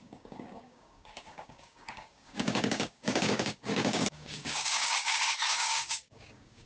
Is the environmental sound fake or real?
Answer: fake